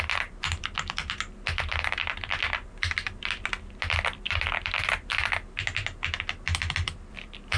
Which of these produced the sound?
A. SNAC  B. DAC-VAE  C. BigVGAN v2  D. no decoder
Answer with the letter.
C